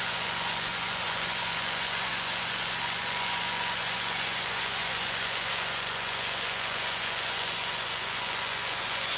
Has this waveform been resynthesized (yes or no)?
yes